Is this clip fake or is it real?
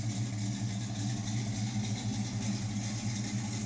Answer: real